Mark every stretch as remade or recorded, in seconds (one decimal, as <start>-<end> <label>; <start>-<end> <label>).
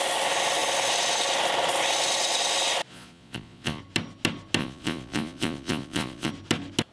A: 0.0-2.9 recorded; 2.9-3.8 remade; 3.8-4.6 recorded; 4.6-6.3 remade; 6.3-6.9 recorded